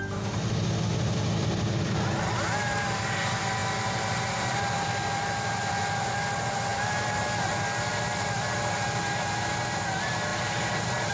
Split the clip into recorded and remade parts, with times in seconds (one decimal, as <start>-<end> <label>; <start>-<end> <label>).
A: 0.0-11.1 recorded